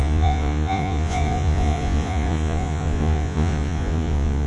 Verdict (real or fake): fake